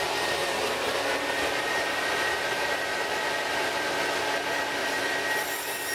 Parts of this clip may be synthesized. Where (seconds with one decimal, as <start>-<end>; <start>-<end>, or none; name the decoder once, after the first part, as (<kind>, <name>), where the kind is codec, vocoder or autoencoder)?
0.4-3.9 (vocoder, BigVGAN v2); 4.8-5.4